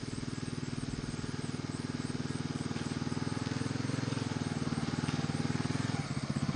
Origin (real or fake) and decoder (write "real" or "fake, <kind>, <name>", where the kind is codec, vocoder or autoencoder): real